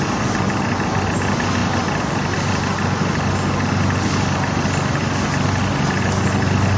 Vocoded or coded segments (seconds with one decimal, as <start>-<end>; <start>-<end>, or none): none